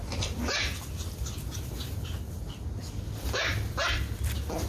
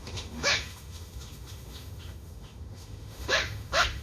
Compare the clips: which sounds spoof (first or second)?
second